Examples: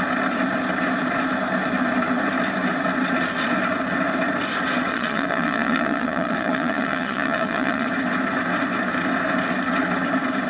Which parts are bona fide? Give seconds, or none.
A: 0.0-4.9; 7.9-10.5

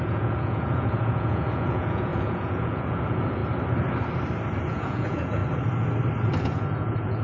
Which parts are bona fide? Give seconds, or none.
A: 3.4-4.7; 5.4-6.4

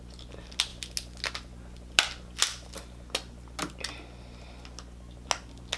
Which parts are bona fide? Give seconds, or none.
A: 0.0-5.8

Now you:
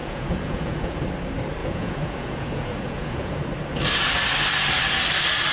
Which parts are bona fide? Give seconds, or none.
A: 1.0-1.6; 3.4-5.5

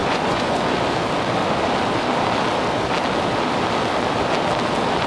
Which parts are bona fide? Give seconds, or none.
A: 0.6-5.1

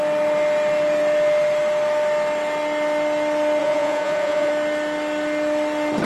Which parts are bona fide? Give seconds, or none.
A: 0.0-3.6; 4.5-6.1

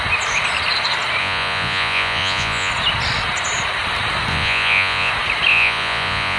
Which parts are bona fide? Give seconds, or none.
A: 0.0-1.2; 2.7-4.3; 5.1-5.5

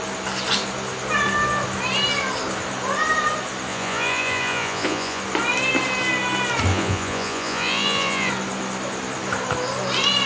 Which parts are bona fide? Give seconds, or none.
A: 0.0-3.7; 5.2-6.7; 8.3-10.3